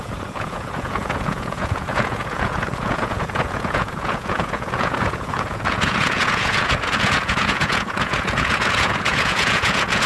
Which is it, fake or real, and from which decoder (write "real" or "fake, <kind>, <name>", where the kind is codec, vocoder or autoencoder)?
fake, vocoder, Vocos